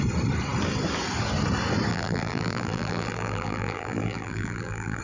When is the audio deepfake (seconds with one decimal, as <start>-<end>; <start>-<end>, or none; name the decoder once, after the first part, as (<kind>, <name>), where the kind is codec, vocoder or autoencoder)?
1.9-5.0 (vocoder, BigVGAN v2)